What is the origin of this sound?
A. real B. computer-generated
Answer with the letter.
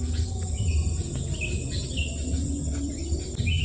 A